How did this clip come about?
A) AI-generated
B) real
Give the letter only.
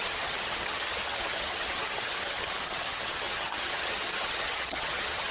A